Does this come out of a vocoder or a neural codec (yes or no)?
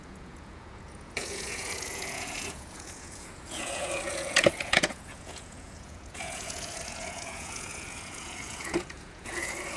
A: yes